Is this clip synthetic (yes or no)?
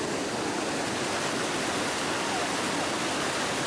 no